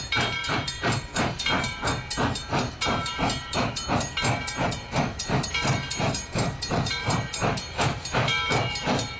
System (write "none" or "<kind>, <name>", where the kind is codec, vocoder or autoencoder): vocoder, BigVGAN v2